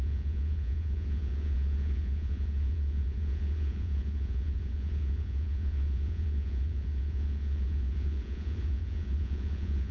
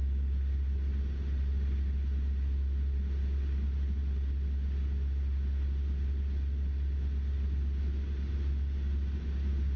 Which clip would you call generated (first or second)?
first